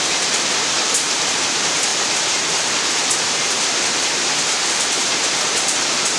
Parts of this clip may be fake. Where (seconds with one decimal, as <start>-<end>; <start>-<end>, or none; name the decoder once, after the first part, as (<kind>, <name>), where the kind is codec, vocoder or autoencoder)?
0.0-6.2 (vocoder, BigVGAN v2)